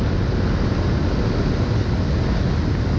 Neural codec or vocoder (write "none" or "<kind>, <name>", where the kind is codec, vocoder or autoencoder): none